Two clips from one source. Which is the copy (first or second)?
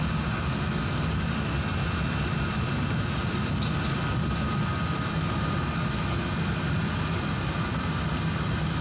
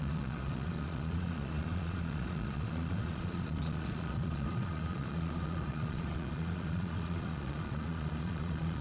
second